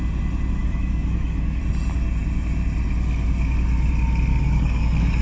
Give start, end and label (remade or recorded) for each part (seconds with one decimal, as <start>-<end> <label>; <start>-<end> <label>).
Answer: 0.0-0.6 recorded; 0.6-1.6 remade; 1.6-4.3 recorded; 4.3-5.2 remade